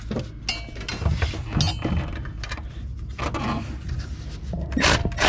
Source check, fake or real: real